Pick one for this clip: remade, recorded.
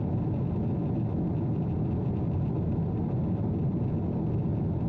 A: recorded